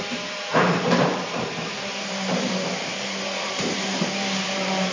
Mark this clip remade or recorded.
remade